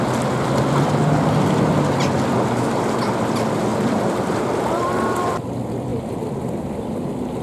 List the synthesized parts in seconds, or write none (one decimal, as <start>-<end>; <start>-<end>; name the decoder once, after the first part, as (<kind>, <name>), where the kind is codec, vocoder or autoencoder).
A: 3.7-5.4 (vocoder, BigVGAN v2); 5.9-6.7